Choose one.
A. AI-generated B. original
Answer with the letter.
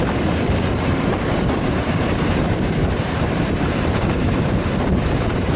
A